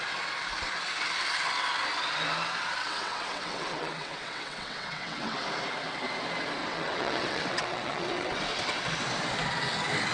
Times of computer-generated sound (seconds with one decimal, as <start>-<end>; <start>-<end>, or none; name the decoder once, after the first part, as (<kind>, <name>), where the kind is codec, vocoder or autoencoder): 2.9-5.4 (vocoder, WaveNeXt); 6.6-8.4